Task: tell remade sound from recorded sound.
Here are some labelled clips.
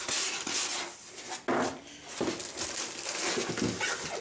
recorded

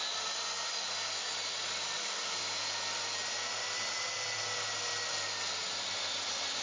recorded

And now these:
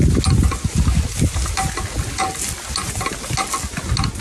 recorded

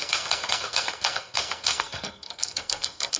remade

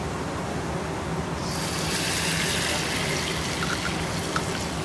recorded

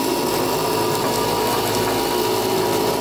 recorded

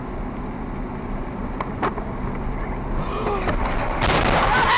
recorded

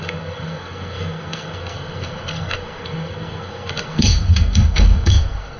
remade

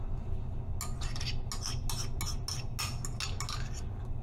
recorded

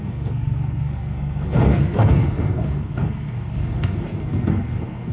remade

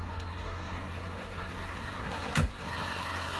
remade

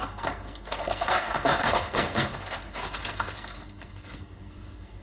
remade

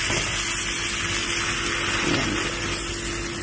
recorded